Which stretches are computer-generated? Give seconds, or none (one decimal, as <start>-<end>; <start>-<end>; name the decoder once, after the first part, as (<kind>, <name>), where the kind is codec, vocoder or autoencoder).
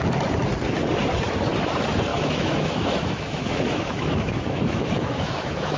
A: 2.1-5.8 (autoencoder, DAC-VAE)